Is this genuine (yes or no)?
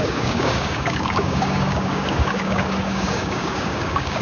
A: no